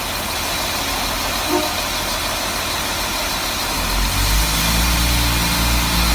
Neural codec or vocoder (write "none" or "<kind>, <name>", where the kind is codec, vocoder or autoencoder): none